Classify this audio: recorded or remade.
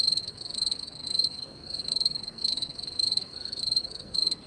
remade